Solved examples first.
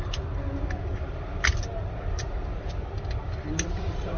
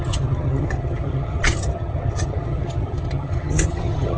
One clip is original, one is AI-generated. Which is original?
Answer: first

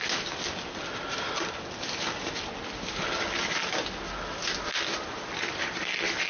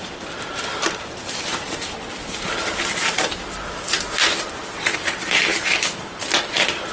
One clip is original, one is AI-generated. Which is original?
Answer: first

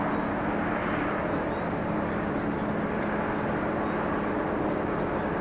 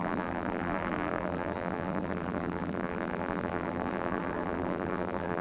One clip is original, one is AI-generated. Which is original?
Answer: first